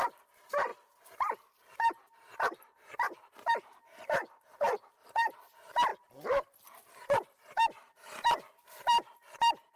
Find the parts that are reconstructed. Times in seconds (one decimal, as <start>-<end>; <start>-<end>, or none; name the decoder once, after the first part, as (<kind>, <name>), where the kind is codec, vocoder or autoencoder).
0.0-0.7 (vocoder, BigVGAN v2); 3.5-4.2; 5.1-5.9; 7.0-9.8